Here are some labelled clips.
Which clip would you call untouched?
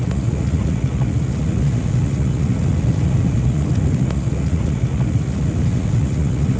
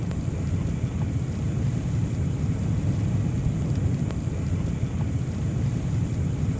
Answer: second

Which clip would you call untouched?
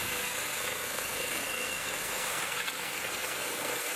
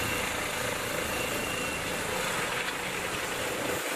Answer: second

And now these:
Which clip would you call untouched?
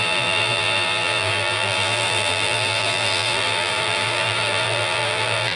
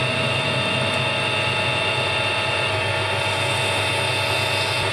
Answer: second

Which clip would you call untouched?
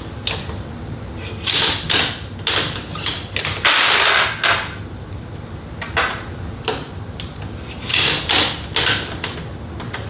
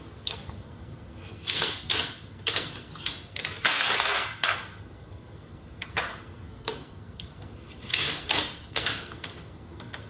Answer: first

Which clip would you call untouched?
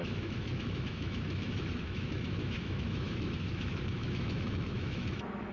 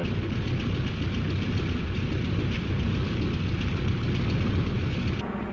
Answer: second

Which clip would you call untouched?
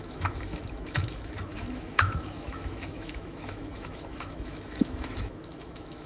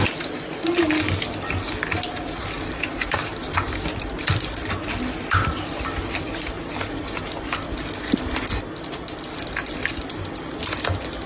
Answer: second